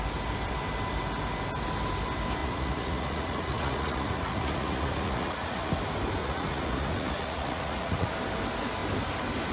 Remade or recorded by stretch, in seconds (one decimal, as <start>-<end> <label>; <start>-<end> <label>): 0.0-2.4 recorded; 2.4-5.7 remade; 5.7-6.2 recorded; 6.2-8.1 remade; 8.1-9.5 recorded